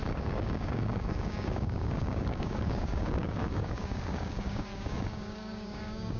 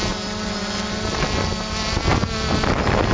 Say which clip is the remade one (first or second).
first